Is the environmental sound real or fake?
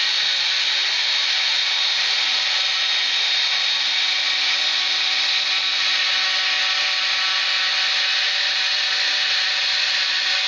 real